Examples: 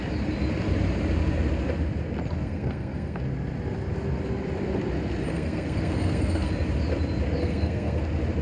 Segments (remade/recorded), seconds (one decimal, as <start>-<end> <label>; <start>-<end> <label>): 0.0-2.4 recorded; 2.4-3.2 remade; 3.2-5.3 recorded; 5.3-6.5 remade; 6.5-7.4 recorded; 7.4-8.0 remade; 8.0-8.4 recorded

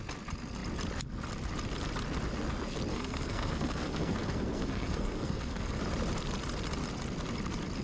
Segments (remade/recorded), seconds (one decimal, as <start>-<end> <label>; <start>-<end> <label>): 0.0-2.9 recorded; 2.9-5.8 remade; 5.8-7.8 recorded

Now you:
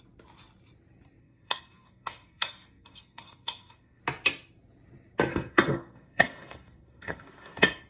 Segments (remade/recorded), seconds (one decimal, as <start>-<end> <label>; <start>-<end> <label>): 0.0-1.2 recorded; 1.2-4.0 remade; 4.0-5.3 recorded; 5.3-7.9 remade

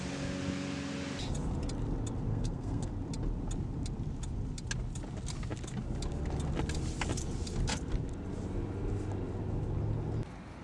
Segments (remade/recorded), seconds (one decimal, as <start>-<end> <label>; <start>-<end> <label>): 0.0-2.3 recorded; 2.3-2.9 remade; 2.9-10.6 recorded